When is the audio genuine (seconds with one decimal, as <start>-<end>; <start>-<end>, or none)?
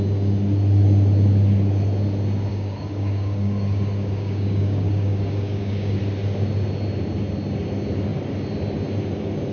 0.0-2.5; 6.0-9.5